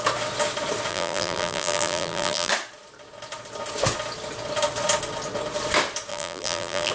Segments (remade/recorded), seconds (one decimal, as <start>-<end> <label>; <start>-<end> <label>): 0.0-0.9 recorded; 0.9-2.5 remade; 2.5-6.1 recorded; 6.1-6.9 remade